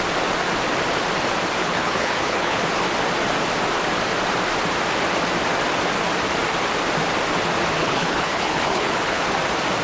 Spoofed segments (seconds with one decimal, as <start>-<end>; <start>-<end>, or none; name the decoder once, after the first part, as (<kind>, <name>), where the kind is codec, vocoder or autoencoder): 1.6-2.6 (codec, HILCodec); 7.8-9.2